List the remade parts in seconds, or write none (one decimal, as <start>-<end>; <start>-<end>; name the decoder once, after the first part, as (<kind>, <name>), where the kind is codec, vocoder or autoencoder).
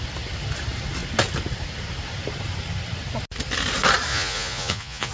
4.1-5.1 (vocoder, Vocos)